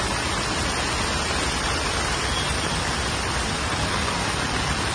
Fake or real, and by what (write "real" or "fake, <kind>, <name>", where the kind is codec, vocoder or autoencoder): real